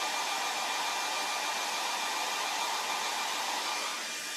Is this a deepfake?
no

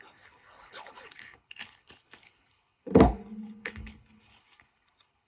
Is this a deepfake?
yes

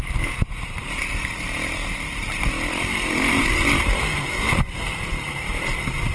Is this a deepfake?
yes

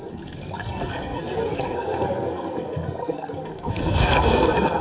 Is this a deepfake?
yes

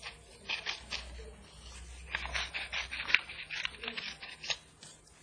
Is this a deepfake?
no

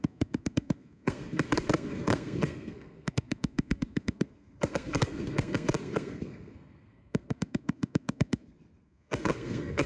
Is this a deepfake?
yes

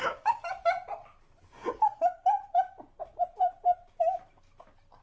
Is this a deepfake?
no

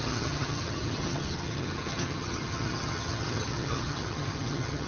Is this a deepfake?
yes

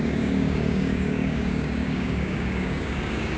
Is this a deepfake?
yes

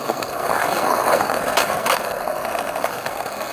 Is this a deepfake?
yes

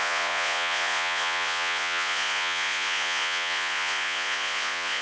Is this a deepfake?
yes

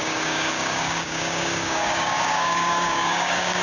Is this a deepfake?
yes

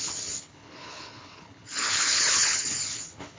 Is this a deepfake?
yes